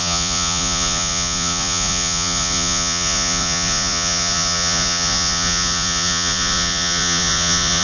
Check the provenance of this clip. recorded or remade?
remade